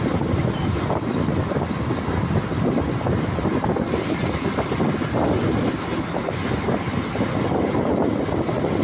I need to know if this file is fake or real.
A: real